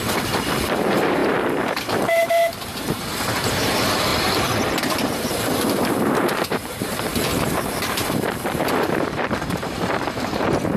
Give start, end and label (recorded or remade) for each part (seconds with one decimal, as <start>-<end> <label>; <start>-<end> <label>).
0.0-4.1 remade; 4.1-4.8 recorded; 4.8-10.8 remade

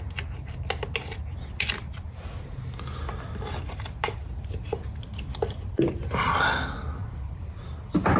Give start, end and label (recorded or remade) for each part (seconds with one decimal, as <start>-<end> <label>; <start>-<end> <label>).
0.0-8.2 recorded

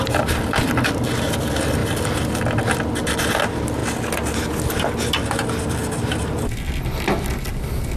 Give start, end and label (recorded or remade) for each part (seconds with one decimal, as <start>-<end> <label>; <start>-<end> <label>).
0.0-8.0 recorded